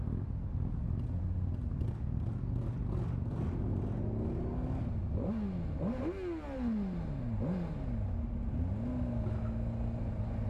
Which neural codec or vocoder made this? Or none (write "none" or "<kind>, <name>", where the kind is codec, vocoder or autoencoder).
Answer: none